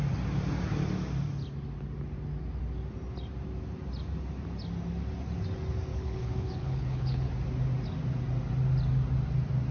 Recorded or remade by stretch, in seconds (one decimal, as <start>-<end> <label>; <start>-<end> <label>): 0.0-5.9 recorded; 5.9-7.3 remade; 7.3-9.7 recorded